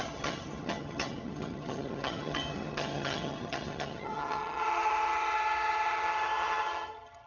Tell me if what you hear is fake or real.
fake